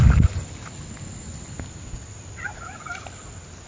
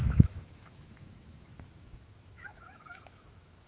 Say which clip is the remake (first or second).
second